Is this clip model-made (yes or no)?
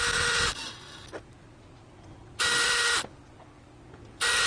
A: no